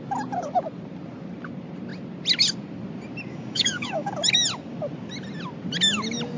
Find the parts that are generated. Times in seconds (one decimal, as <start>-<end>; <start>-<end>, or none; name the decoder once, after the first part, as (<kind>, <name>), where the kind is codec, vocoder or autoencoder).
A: 3.3-4.1 (codec, DAC)